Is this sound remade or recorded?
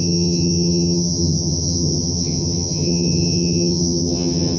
remade